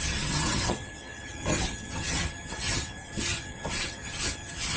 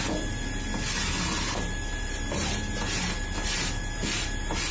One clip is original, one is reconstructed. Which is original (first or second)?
second